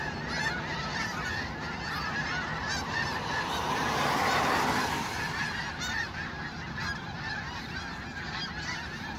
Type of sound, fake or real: real